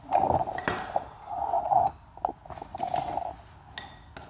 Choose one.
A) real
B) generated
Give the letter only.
A